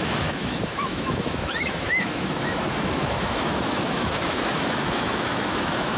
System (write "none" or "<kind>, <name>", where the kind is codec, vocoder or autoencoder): autoencoder, DAC-VAE